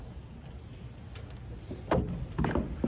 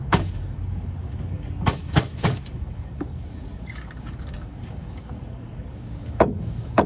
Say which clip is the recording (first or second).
first